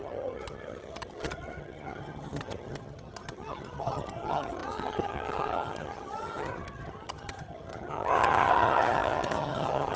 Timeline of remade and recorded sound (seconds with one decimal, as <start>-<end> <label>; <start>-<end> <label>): 0.0-10.0 remade